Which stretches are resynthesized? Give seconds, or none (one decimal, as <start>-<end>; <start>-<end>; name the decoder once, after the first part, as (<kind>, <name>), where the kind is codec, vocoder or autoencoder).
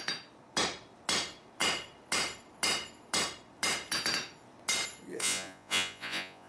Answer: 5.2-6.5 (vocoder, Vocos)